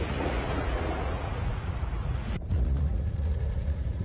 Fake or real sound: fake